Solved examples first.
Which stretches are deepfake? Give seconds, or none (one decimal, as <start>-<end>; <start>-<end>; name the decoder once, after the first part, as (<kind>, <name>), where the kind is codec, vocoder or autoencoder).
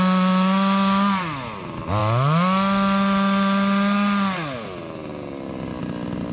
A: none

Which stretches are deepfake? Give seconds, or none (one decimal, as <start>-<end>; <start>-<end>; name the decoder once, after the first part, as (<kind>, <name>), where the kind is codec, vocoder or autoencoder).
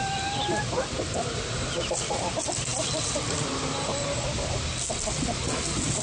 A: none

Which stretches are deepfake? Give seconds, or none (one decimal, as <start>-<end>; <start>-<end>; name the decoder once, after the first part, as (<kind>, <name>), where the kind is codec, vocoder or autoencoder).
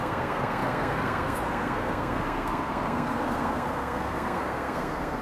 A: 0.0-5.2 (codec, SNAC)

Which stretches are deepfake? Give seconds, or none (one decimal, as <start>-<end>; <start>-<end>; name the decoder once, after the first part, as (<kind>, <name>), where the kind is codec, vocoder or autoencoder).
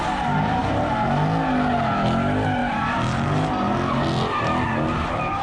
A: none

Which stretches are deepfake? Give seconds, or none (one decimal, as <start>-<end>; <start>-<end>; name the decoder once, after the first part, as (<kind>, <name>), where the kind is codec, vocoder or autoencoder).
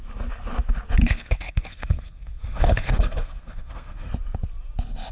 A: 1.0-4.1 (codec, SNAC)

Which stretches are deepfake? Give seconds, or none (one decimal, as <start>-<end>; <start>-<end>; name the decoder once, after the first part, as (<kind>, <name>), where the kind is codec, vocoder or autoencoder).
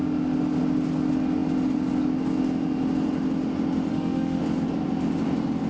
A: 3.9-4.4 (autoencoder, DAC-VAE)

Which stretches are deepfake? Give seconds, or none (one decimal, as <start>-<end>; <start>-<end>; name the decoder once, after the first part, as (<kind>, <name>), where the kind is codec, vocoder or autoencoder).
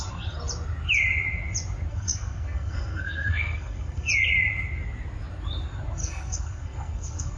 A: 1.9-4.1 (codec, SNAC); 6.0-7.4